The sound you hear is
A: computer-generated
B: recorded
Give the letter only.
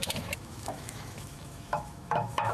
A